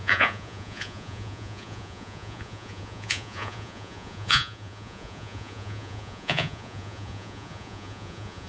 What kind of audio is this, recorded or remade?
remade